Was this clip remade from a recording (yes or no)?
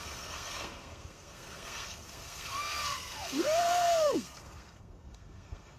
yes